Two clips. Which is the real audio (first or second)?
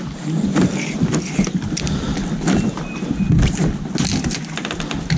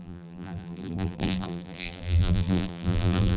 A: first